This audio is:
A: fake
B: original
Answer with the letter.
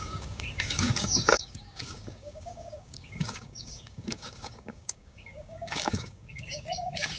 A